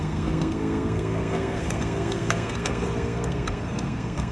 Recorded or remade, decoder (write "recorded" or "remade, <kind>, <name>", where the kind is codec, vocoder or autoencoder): remade, codec, SNAC